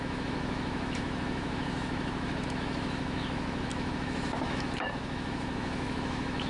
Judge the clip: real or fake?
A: fake